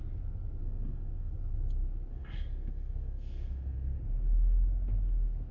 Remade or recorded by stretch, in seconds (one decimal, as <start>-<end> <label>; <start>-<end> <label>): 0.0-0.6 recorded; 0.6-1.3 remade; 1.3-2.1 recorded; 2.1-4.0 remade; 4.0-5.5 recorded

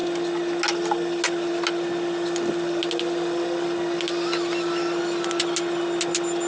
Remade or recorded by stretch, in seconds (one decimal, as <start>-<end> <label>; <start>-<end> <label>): 0.0-6.5 recorded

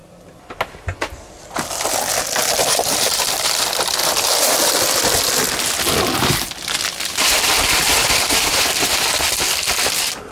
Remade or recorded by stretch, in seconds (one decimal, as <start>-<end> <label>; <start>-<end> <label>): 0.0-2.6 recorded; 2.6-3.5 remade; 3.5-7.9 recorded; 7.9-8.6 remade; 8.6-10.3 recorded

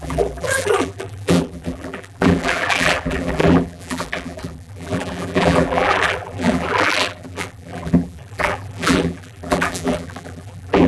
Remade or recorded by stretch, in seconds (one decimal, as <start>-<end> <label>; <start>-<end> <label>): 0.0-10.9 remade

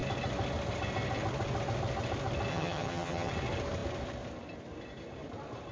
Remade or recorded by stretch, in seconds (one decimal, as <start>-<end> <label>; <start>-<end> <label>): 0.0-2.5 recorded; 2.5-3.3 remade; 3.3-5.7 recorded

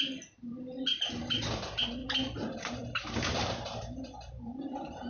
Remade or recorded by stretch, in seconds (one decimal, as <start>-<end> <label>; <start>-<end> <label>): 0.0-2.0 recorded; 2.0-5.1 remade

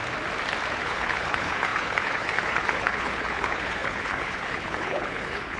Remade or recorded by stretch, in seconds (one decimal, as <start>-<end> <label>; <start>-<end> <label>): 0.0-0.8 recorded; 0.8-5.6 remade